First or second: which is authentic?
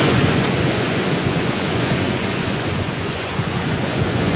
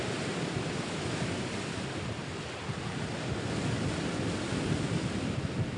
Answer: second